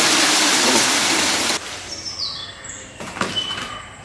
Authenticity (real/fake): real